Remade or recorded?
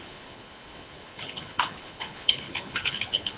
remade